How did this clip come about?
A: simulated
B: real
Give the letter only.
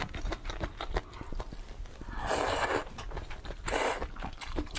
B